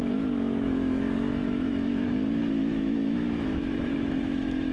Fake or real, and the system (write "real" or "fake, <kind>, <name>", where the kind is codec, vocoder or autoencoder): fake, autoencoder, DAC-VAE